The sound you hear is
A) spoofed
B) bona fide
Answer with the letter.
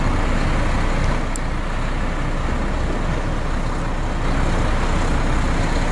B